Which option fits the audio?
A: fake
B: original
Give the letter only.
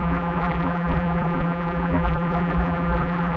A